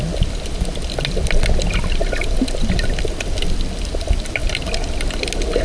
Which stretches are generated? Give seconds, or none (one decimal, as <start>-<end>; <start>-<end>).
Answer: none